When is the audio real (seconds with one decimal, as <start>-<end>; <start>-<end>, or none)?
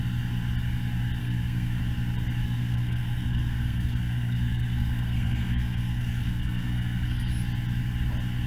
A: 0.0-1.2; 1.8-2.4; 7.3-8.5